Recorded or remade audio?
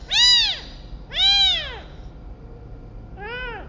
recorded